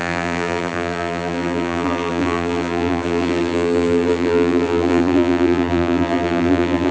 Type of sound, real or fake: fake